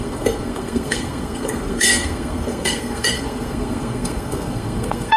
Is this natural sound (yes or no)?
no